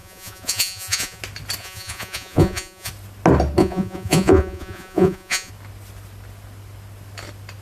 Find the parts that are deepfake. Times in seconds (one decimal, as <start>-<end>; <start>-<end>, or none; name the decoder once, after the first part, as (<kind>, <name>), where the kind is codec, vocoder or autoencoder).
0.0-1.2 (vocoder, Vocos); 1.6-2.9; 3.6-5.5